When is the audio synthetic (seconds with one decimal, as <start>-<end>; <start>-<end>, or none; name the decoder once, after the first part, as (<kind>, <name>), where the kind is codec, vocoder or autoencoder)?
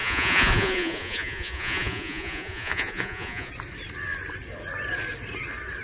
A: 0.0-3.5 (vocoder, Vocos)